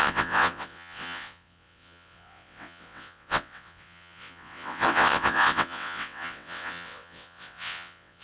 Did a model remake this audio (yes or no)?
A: yes